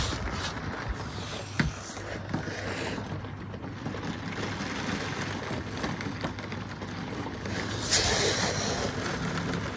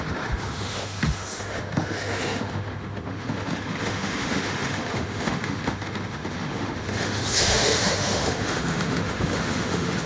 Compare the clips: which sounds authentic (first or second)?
first